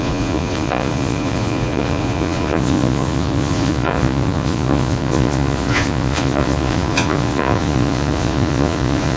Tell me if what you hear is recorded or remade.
remade